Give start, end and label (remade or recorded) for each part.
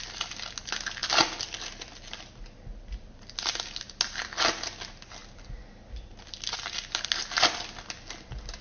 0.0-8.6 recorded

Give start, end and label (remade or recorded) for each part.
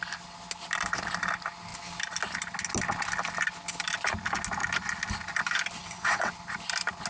0.0-5.8 recorded; 5.8-6.3 remade; 6.3-7.1 recorded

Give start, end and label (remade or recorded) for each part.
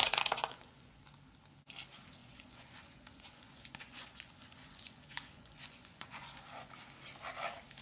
0.0-1.0 remade; 1.0-2.2 recorded; 2.2-6.7 remade; 6.7-7.8 recorded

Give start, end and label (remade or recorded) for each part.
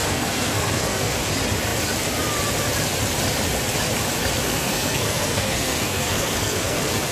0.0-1.2 remade; 1.2-4.4 recorded; 4.4-7.1 remade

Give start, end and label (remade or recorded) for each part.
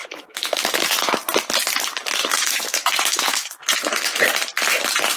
0.0-0.8 remade; 0.8-2.2 recorded; 2.2-4.2 remade; 4.2-5.2 recorded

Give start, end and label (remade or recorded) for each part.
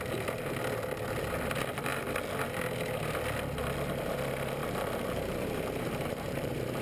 0.0-4.6 recorded; 4.6-6.8 remade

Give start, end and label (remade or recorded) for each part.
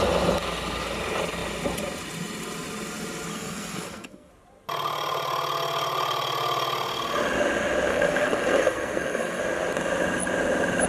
0.0-3.3 recorded; 3.3-4.3 remade; 4.3-7.9 recorded; 7.9-9.4 remade; 9.4-10.9 recorded